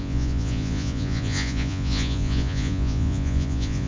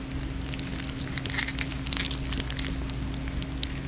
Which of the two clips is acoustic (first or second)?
second